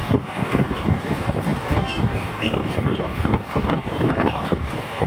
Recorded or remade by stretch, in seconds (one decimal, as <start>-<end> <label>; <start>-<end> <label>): 0.0-5.1 remade